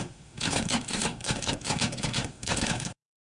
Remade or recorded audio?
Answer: remade